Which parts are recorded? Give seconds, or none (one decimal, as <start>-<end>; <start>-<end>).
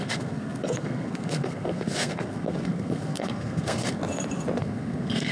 4.0-4.6